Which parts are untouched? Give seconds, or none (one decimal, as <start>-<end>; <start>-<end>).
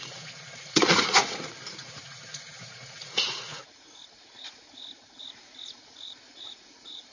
none